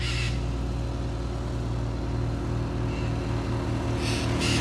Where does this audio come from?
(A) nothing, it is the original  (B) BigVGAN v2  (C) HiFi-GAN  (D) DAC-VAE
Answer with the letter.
A